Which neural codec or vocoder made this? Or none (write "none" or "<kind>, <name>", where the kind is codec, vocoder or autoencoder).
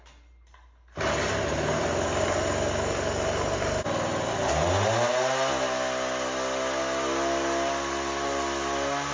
none